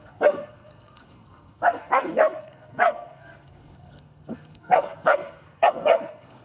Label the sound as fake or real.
fake